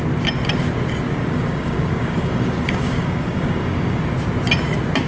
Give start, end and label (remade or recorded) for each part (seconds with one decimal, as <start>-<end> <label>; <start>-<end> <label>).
0.0-1.2 recorded; 1.2-4.0 remade; 4.0-5.1 recorded